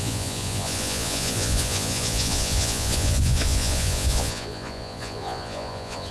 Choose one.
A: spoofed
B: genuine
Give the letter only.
A